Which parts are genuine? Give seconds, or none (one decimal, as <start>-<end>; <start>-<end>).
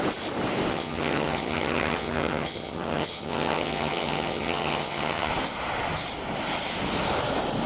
0.0-0.7; 5.3-7.7